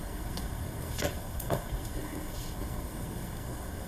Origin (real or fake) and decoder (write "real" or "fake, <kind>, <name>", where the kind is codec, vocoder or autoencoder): fake, codec, SNAC